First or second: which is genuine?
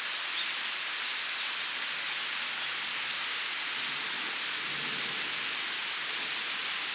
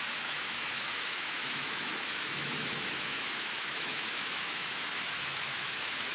first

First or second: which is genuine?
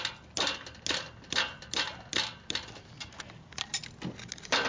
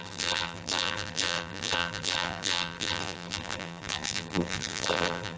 first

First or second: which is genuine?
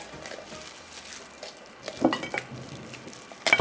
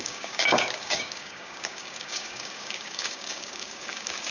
first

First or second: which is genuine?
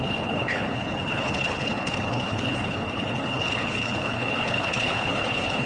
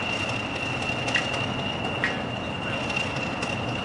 second